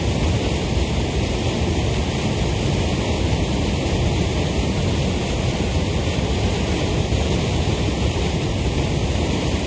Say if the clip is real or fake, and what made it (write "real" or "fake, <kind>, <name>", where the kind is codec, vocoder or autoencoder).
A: real